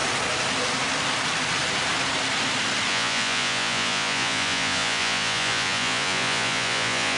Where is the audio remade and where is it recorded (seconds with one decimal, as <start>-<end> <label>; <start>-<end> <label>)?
0.0-2.9 recorded; 2.9-7.2 remade